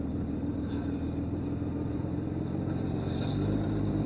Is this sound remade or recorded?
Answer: remade